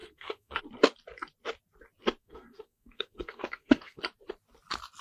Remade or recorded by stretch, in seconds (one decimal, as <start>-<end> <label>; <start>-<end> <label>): 0.0-0.6 remade; 0.6-2.2 recorded; 2.2-4.0 remade; 4.0-5.0 recorded